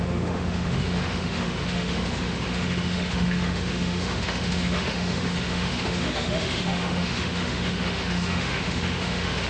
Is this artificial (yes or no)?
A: yes